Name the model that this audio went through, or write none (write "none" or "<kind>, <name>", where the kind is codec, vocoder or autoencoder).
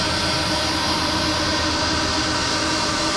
none